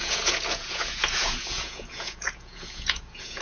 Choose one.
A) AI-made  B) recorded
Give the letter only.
A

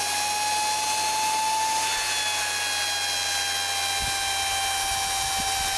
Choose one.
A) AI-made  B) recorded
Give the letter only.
B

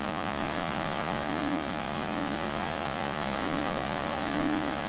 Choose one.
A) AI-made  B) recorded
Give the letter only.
A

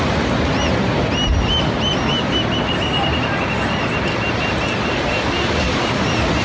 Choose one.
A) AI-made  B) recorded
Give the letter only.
B